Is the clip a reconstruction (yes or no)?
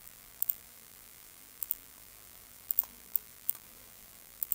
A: yes